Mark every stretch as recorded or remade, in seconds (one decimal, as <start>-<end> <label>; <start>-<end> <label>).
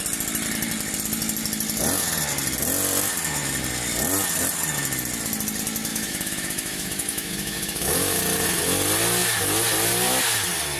0.0-5.9 recorded; 5.9-8.2 remade; 8.2-10.8 recorded